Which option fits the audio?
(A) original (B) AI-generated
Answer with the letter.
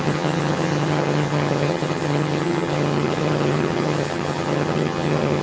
B